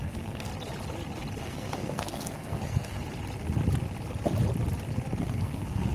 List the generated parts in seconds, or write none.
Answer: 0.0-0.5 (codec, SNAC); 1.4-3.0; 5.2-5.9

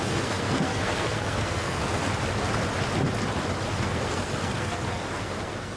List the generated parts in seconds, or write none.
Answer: 0.0-1.8 (codec, SNAC); 3.7-5.8